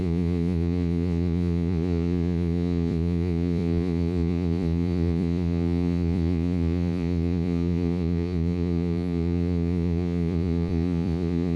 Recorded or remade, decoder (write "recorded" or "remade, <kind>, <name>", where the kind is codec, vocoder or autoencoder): remade, vocoder, Vocos